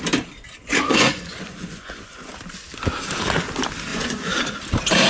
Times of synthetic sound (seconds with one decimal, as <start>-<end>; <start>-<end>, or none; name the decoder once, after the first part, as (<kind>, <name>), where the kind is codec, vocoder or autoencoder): 0.6-2.3 (vocoder, Vocos); 3.9-4.4